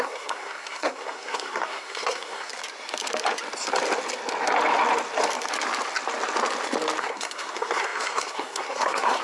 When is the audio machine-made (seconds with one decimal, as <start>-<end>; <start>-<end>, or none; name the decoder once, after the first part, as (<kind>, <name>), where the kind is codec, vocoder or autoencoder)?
0.0-2.5 (codec, SNAC); 7.0-9.2